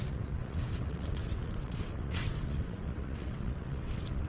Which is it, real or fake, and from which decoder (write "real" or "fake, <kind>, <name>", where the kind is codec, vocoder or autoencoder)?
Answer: fake, vocoder, WaveNeXt